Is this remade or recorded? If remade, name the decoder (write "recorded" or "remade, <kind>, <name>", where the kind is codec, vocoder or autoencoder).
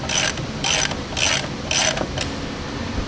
remade, vocoder, BigVGAN v2